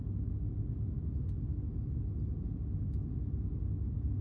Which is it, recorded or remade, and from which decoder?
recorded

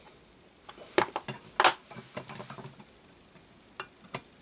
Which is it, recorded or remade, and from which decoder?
recorded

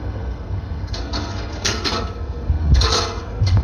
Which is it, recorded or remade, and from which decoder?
remade, codec, SNAC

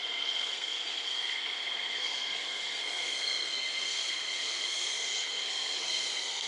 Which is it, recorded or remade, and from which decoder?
remade, codec, SNAC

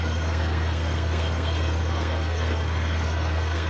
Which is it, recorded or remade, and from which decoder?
remade, codec, SNAC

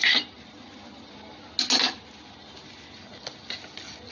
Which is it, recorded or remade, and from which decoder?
recorded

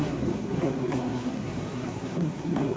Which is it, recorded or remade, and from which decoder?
remade, codec, SNAC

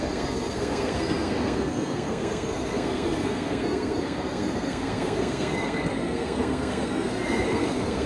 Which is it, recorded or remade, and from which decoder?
remade, codec, SNAC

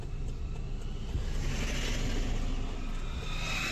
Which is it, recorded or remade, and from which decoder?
recorded